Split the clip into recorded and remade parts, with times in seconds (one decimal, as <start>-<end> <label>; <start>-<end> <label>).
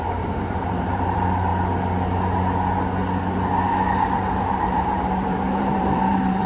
0.0-1.5 remade; 1.5-4.5 recorded; 4.5-6.5 remade